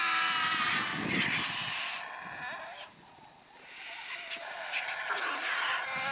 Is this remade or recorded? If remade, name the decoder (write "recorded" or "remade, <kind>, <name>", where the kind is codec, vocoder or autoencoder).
recorded